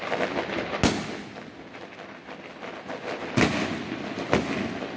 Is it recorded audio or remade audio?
recorded